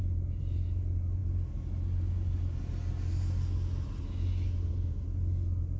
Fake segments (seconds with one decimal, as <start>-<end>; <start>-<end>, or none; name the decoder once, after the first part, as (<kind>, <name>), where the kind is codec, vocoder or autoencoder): none